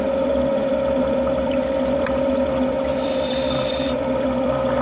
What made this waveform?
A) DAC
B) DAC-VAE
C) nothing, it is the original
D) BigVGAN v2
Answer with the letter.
D